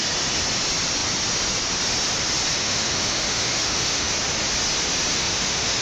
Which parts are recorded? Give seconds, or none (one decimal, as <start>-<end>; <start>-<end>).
0.0-2.6; 4.1-5.1